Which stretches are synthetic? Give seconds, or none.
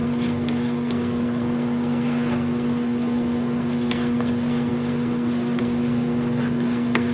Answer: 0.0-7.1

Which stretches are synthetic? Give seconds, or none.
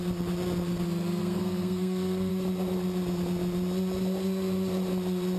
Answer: 1.2-2.3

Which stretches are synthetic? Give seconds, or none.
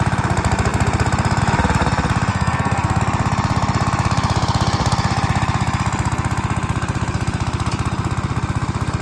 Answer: 2.3-3.0